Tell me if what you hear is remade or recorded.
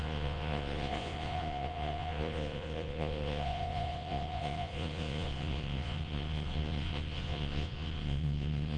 remade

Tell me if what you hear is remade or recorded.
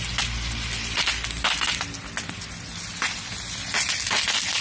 recorded